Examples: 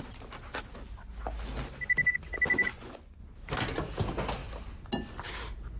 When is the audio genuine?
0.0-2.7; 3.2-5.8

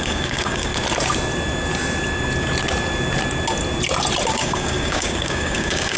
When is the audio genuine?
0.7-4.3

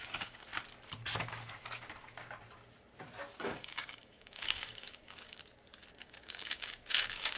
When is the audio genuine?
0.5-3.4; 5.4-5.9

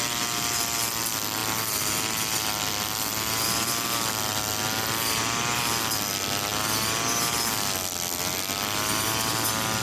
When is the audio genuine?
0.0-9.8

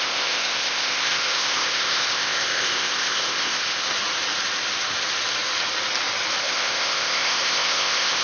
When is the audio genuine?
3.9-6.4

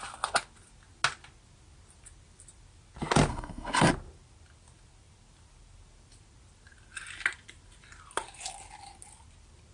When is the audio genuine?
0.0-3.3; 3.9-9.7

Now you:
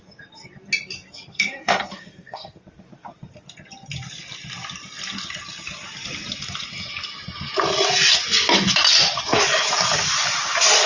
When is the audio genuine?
0.0-1.3; 2.6-10.9